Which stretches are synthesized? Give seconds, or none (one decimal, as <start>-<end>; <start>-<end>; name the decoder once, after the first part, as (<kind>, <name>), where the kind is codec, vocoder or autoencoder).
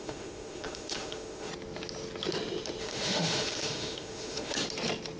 0.0-1.5 (autoencoder, DAC-VAE); 2.8-4.6